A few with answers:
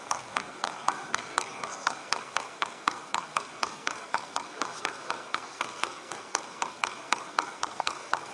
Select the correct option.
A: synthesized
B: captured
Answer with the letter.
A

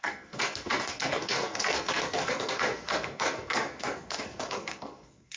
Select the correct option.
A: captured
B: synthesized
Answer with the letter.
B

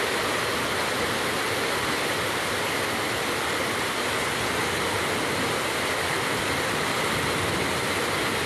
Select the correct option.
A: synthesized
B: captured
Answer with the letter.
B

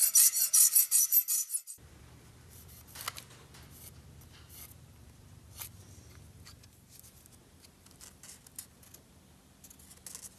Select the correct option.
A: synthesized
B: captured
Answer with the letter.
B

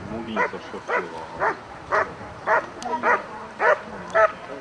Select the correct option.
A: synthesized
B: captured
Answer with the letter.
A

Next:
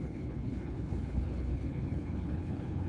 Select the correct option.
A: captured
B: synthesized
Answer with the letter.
B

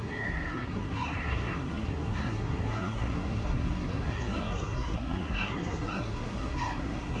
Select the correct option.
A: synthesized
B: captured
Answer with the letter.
A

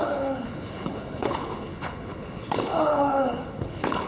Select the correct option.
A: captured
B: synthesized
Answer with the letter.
B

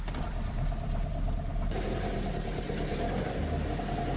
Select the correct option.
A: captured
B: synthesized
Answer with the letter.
A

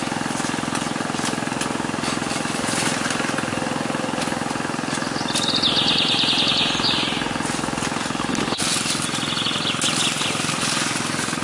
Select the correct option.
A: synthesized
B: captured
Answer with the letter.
B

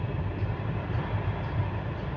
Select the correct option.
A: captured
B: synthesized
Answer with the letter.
A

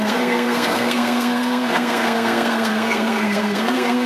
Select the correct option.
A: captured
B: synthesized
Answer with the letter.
B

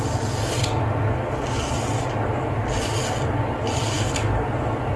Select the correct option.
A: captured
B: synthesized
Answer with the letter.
A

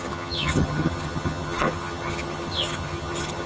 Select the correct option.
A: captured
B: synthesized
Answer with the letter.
B